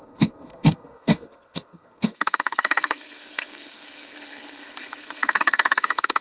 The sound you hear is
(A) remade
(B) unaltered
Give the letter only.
A